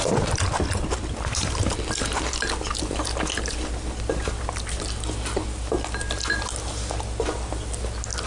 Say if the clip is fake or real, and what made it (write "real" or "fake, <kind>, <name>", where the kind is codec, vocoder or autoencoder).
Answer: real